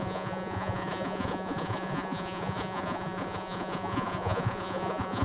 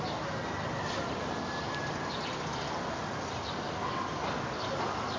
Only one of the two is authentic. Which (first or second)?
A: second